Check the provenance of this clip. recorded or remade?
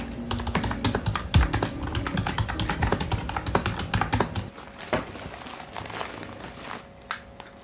recorded